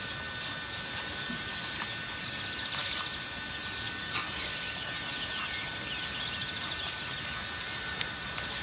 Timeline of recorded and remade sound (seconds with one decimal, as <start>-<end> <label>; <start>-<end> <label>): 0.0-8.6 recorded